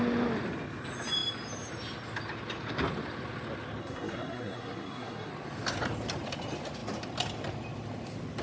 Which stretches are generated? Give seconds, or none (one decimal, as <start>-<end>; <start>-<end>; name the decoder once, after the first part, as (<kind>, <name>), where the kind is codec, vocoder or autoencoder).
3.8-5.3 (codec, SNAC)

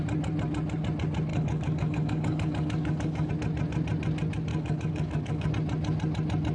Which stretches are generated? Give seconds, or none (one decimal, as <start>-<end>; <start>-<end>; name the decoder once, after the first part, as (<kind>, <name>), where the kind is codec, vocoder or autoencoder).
1.3-3.3 (codec, DAC); 4.5-5.5